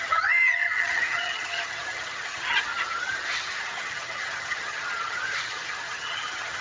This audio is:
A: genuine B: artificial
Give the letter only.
B